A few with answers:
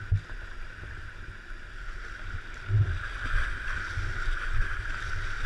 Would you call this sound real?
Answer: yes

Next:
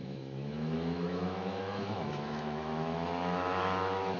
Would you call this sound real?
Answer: no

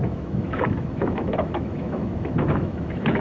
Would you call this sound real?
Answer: no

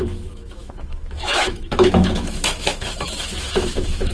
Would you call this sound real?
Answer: no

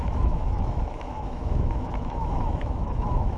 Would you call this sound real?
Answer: no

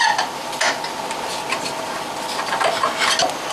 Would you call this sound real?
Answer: yes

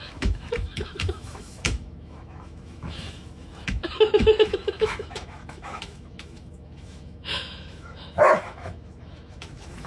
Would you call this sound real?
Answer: no